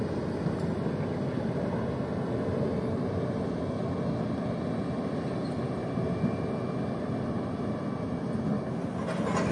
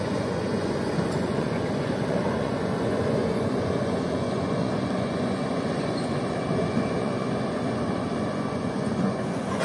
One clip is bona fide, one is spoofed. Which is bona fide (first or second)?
first